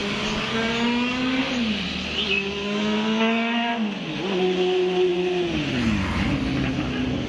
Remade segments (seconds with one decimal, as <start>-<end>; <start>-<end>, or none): 0.0-1.4; 2.4-3.7